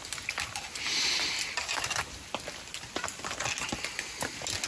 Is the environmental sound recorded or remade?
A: recorded